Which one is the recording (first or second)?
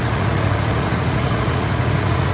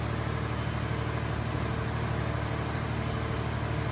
second